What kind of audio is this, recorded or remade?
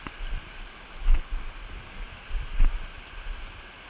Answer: recorded